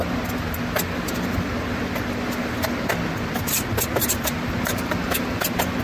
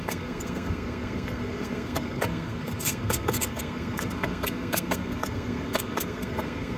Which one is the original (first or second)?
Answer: first